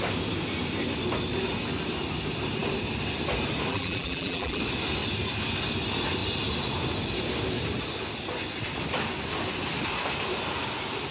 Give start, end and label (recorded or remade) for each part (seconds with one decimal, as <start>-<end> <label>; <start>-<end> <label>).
0.0-3.7 recorded; 3.7-4.6 remade; 4.6-11.1 recorded